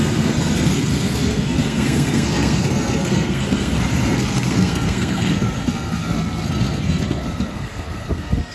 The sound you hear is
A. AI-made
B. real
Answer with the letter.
A